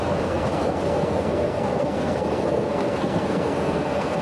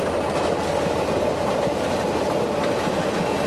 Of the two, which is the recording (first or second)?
second